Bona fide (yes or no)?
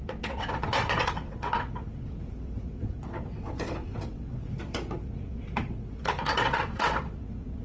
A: no